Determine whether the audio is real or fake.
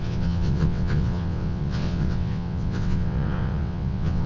fake